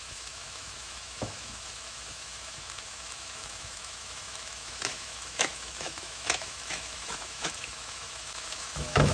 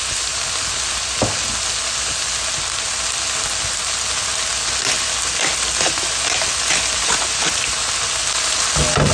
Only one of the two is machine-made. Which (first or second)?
first